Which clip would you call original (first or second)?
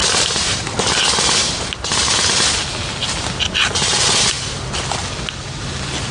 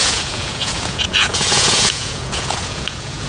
first